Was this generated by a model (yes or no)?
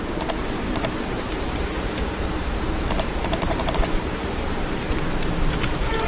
yes